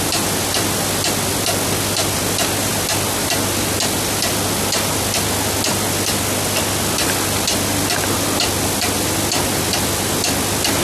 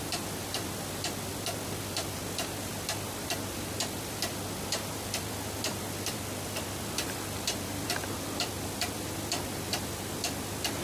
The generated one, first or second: second